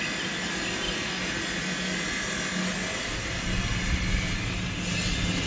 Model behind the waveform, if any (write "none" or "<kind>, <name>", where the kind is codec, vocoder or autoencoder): none